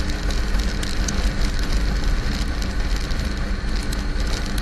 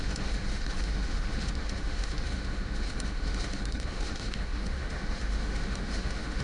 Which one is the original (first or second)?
first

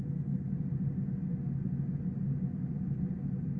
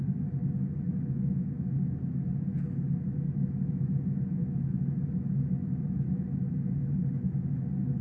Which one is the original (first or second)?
first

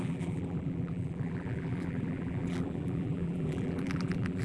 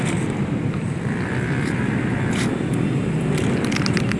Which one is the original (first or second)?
second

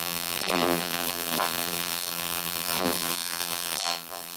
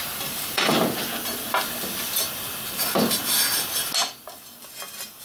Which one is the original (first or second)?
second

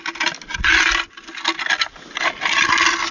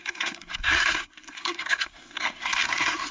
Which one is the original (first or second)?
first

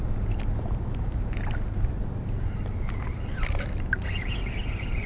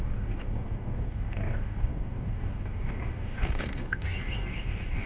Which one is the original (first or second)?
first